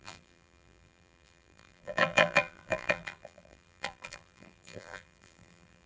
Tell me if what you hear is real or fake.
fake